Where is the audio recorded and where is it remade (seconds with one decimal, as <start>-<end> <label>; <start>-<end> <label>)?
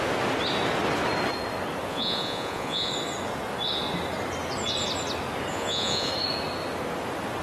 0.0-1.9 recorded; 1.9-2.9 remade; 2.9-5.5 recorded; 5.5-6.1 remade; 6.1-7.4 recorded